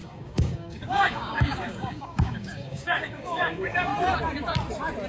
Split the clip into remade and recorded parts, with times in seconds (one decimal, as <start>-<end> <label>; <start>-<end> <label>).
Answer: 0.0-3.9 remade; 3.9-5.1 recorded